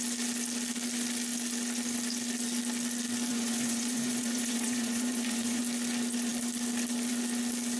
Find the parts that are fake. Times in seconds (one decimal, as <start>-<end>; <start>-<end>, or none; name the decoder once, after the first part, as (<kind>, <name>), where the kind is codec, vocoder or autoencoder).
3.3-5.6 (vocoder, Vocos)

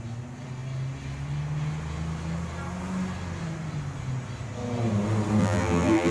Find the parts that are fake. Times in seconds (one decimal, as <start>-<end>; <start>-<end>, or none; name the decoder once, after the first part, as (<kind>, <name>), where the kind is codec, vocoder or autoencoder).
5.4-6.1 (vocoder, BigVGAN v2)

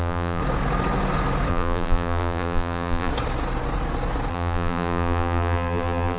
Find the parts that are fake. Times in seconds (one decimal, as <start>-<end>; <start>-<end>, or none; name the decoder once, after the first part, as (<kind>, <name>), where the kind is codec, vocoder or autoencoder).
0.0-0.4 (vocoder, BigVGAN v2); 1.5-3.1; 4.3-6.2